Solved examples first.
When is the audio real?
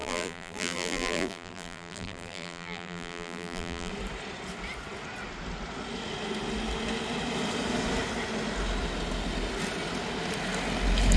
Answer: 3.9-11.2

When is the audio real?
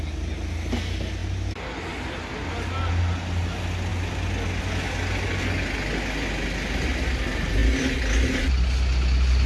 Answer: 0.0-9.5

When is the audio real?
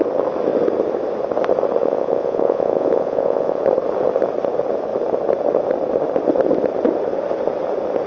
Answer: 0.0-1.8; 3.6-8.1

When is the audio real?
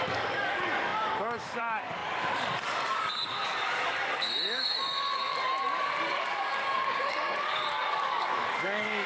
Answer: none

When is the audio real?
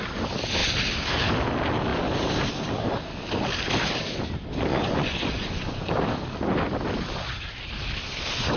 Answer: 0.0-4.7; 5.9-8.6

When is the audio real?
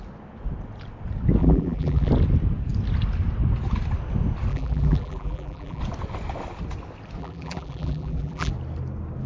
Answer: 0.0-1.4; 2.1-4.5; 5.8-7.2; 8.5-9.3